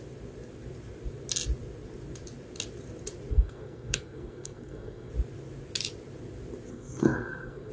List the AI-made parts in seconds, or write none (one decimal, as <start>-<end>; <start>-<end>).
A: 3.3-5.1; 6.7-7.7